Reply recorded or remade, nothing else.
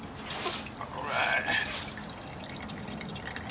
recorded